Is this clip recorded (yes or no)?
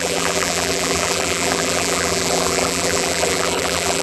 no